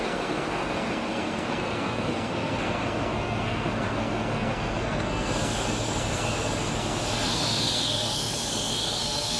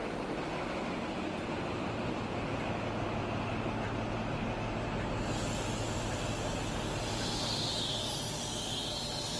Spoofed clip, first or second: first